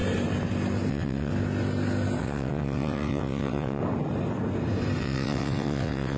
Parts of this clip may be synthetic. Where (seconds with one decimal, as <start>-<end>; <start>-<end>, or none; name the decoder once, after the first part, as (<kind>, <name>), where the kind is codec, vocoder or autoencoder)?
0.9-1.3 (vocoder, WaveNeXt); 2.2-3.8; 5.0-6.2